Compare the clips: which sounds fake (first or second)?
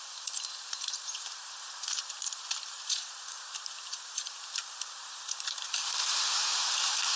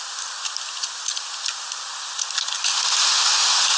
first